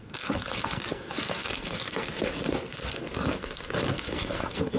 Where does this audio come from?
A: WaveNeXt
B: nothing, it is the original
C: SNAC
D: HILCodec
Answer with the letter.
C